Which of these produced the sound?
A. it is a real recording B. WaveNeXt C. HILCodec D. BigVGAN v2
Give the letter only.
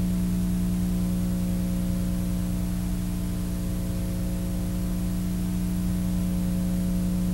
A